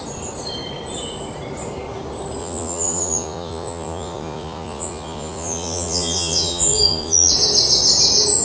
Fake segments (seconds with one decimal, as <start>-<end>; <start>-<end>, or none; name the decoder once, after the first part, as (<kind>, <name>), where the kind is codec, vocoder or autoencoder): 2.4-7.3 (vocoder, Vocos)